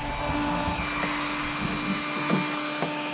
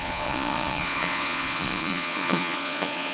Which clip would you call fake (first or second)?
second